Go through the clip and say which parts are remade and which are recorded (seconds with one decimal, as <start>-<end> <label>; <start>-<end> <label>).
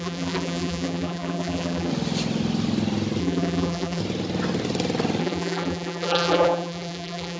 0.0-1.9 remade; 1.9-3.2 recorded; 3.2-4.0 remade; 4.0-5.2 recorded; 5.2-7.4 remade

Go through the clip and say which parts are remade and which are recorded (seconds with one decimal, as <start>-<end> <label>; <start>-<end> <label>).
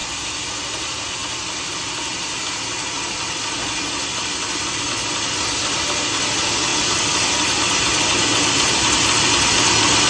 0.0-0.5 remade; 0.5-6.7 recorded; 6.7-7.6 remade; 7.6-10.1 recorded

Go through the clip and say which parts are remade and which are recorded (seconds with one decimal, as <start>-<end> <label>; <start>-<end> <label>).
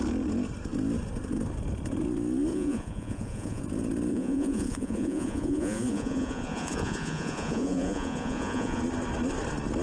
0.0-2.5 recorded; 2.5-3.6 remade; 3.6-4.1 recorded; 4.1-8.8 remade; 8.8-9.8 recorded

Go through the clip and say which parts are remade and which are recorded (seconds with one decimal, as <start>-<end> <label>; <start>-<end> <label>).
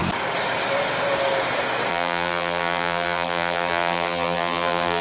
0.0-1.9 recorded; 1.9-5.0 remade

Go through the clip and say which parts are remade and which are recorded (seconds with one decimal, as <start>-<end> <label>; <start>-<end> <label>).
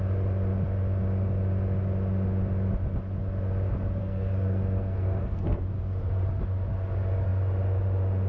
0.0-4.0 recorded; 4.0-5.6 remade; 5.6-8.3 recorded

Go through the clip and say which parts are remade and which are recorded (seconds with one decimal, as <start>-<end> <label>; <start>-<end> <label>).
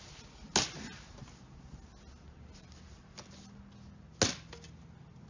0.0-5.3 recorded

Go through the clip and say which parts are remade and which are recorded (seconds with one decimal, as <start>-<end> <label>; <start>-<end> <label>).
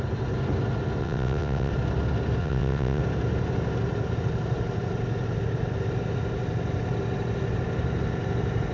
0.0-1.0 recorded; 1.0-1.7 remade; 1.7-2.4 recorded; 2.4-3.0 remade; 3.0-8.7 recorded